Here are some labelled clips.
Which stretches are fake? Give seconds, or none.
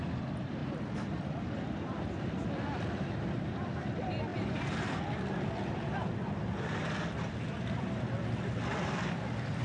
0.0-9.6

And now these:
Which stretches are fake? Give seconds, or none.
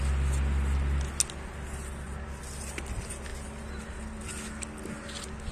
none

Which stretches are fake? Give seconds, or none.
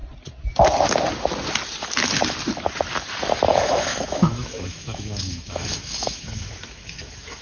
3.5-7.4